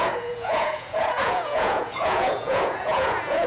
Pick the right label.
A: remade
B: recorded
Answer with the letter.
A